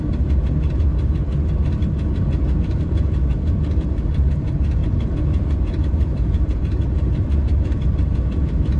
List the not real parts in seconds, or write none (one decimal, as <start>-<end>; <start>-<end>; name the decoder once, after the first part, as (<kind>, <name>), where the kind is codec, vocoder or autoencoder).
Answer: 0.0-0.9 (vocoder, BigVGAN v2); 2.6-8.8